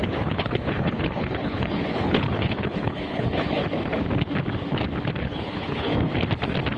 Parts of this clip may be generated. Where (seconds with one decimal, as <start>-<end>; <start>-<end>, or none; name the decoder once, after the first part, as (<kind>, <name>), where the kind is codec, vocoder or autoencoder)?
0.0-3.6 (codec, HILCodec); 5.2-5.9